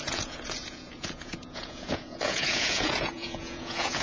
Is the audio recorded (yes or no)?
no